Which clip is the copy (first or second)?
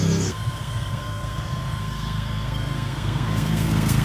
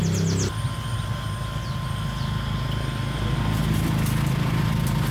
first